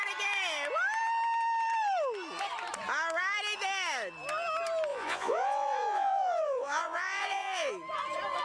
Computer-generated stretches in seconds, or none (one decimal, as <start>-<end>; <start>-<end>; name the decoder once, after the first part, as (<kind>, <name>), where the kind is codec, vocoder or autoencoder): 4.9-7.7 (vocoder, Vocos)